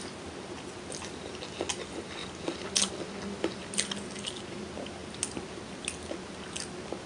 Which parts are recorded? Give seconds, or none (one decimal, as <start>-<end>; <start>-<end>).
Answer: 0.0-7.1